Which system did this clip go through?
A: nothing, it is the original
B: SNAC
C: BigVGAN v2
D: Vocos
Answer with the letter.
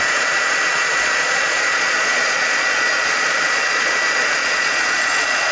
D